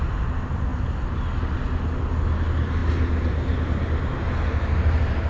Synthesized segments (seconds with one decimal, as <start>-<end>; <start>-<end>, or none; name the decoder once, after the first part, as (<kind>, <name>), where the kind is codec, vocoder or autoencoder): none